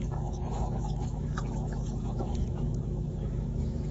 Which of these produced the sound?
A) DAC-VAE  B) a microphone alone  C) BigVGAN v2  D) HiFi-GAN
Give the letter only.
A